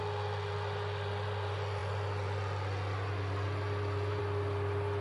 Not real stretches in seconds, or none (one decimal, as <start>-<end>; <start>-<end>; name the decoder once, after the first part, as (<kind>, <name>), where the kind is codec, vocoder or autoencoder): none

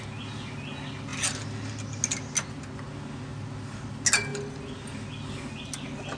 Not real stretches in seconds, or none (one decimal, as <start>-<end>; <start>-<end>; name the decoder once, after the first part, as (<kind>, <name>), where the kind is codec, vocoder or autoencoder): none

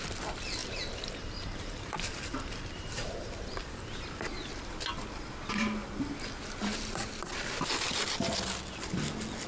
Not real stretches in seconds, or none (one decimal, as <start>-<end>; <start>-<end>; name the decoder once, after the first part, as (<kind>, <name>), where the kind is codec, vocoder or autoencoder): 0.6-3.8 (vocoder, BigVGAN v2)

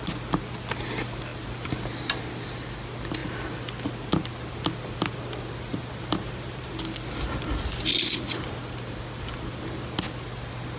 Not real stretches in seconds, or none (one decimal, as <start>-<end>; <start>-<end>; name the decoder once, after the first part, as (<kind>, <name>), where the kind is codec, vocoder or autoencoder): 5.7-6.7 (vocoder, BigVGAN v2)